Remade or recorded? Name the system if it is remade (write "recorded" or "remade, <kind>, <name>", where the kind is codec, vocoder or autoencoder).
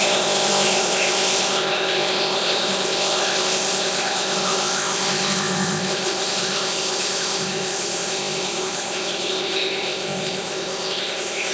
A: remade, codec, ZipCodec